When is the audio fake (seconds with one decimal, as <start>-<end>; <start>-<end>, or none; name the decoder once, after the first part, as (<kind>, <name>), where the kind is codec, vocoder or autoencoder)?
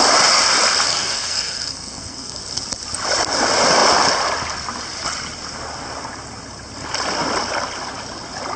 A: 0.9-2.4 (codec, SNAC)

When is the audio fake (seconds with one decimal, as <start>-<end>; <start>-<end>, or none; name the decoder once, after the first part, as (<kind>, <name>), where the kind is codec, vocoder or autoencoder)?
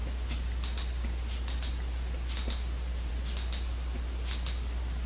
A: none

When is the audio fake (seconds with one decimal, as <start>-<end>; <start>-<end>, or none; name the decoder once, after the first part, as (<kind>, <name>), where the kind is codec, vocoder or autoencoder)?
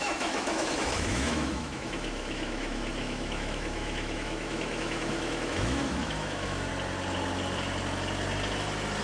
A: 0.0-6.7 (autoencoder, DAC-VAE)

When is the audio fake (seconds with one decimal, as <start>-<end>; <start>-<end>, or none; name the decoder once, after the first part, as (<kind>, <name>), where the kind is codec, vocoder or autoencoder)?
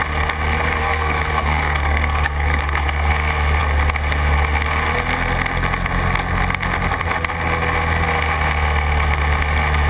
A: 0.8-3.1 (codec, SNAC)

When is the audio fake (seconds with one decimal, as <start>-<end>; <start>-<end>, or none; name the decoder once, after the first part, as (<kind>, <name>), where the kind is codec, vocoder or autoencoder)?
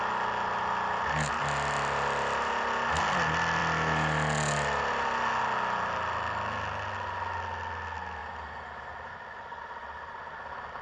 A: 8.2-9.1 (vocoder, BigVGAN v2)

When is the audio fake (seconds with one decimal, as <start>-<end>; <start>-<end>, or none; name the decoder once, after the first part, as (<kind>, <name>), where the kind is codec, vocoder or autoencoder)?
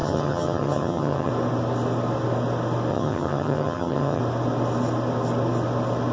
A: 0.0-1.3 (vocoder, HiFi-GAN); 2.9-4.2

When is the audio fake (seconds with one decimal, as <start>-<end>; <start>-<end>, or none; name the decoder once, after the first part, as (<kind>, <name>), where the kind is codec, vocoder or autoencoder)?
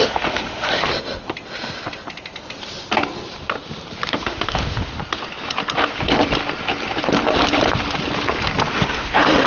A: 0.0-0.8 (autoencoder, DAC-VAE); 4.2-4.9; 8.7-9.5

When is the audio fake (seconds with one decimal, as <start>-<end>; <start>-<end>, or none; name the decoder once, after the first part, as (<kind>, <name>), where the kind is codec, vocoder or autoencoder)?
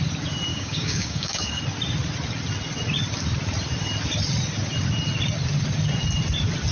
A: 0.5-1.6 (codec, DAC)